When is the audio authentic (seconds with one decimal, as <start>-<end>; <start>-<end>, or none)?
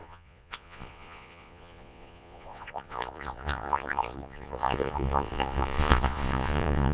none